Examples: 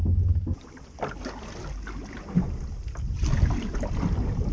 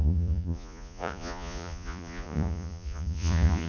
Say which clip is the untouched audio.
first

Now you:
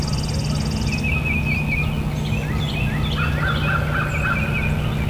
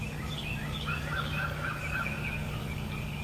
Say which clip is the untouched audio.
first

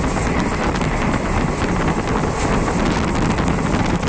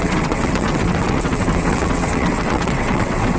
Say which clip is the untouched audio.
first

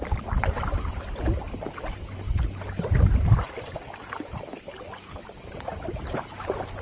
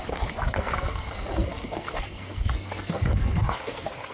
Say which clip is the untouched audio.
first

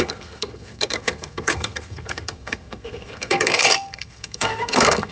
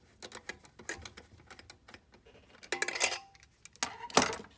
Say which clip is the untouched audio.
second